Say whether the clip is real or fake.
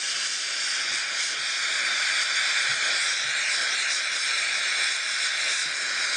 real